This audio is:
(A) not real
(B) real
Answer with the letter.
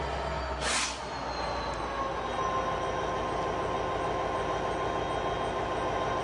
B